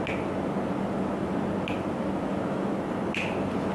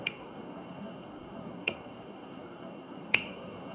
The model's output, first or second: second